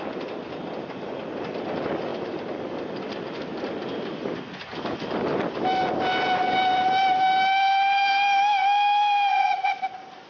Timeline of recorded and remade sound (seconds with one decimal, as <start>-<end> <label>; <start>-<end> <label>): 0.0-9.3 recorded; 9.3-9.8 remade; 9.8-10.3 recorded